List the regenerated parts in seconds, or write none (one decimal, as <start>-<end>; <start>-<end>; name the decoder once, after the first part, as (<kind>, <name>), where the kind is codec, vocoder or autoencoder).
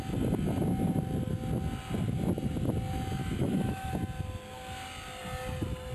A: 3.2-3.9 (autoencoder, DAC-VAE)